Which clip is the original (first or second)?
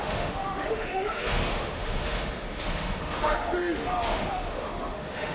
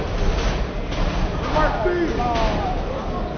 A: second